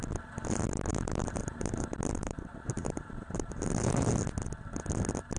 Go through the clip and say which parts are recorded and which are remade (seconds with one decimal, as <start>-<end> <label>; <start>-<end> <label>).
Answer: 0.0-0.9 recorded; 0.9-4.1 remade; 4.1-5.4 recorded